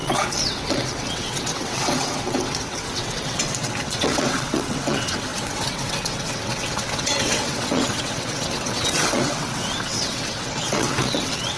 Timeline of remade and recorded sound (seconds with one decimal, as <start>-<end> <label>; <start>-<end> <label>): 0.0-11.6 remade